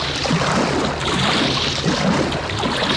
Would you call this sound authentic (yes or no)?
yes